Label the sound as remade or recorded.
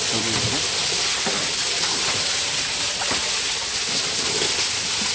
recorded